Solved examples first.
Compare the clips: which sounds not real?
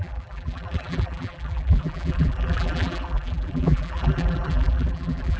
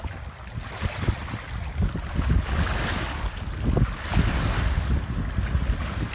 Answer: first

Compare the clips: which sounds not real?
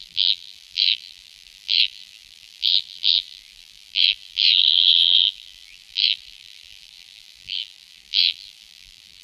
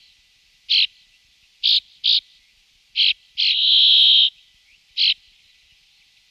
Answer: first